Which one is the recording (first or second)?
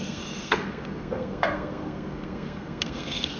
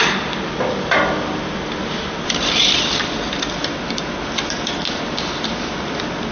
second